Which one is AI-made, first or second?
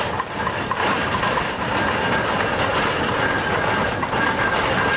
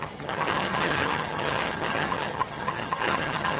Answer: second